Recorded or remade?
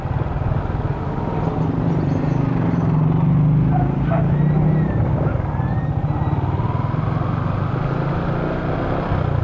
recorded